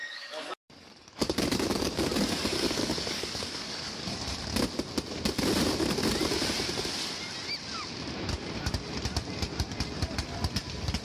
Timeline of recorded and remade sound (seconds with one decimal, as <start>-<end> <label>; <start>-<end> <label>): 0.0-4.2 remade; 4.2-11.0 recorded

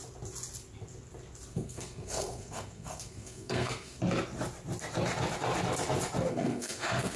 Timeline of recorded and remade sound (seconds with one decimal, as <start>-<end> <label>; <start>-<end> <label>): 0.0-1.5 recorded; 1.5-4.0 remade; 4.0-6.3 recorded; 6.3-7.2 remade

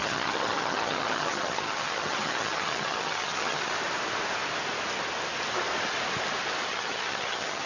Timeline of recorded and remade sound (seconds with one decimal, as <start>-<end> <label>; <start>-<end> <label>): 0.0-3.7 remade; 3.7-6.7 recorded; 6.7-7.7 remade

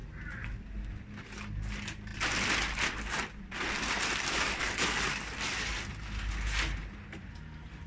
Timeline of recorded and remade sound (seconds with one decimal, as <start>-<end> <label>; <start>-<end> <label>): 0.0-7.9 recorded

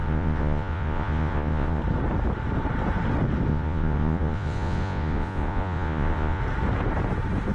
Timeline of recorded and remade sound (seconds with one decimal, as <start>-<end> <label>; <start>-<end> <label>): 0.0-1.8 remade; 1.8-3.5 recorded; 3.5-6.4 remade; 6.4-7.5 recorded

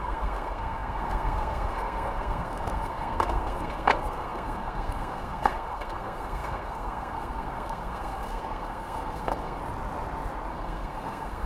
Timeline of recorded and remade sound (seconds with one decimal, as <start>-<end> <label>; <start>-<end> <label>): 0.0-9.6 remade; 9.6-10.5 recorded; 10.5-11.5 remade

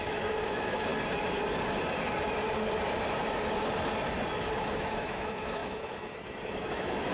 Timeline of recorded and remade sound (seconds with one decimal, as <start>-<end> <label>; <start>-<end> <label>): 0.0-0.9 remade; 0.9-4.6 recorded; 4.6-7.1 remade

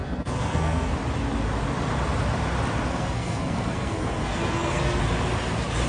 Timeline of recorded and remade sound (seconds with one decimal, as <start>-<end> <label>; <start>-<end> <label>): 0.0-0.9 remade; 0.9-2.9 recorded; 2.9-5.0 remade; 5.0-5.9 recorded